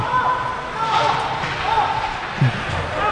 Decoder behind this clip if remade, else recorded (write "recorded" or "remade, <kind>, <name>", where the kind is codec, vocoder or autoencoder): recorded